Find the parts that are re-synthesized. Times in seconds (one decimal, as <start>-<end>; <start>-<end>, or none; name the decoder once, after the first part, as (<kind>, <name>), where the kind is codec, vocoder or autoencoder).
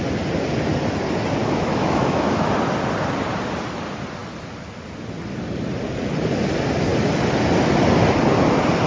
1.4-2.5 (autoencoder, DAC-VAE)